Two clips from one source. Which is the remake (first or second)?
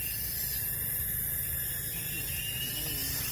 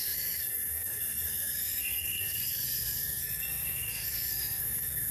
second